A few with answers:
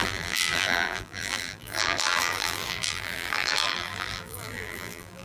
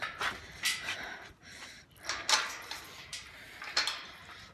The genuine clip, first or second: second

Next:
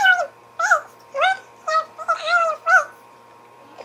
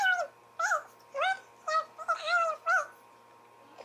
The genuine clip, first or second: second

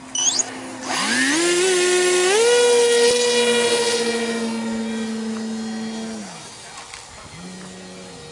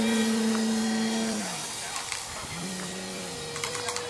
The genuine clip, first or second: first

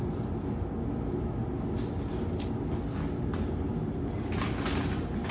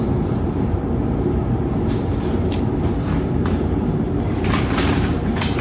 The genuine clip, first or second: first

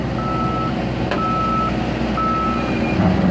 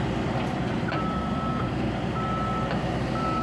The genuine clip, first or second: first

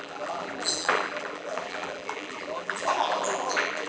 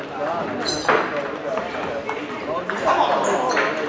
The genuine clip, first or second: second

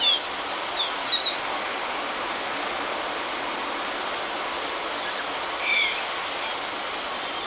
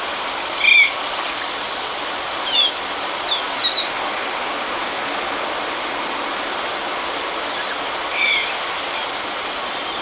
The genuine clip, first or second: first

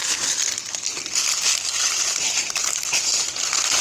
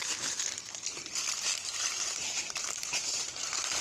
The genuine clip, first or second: first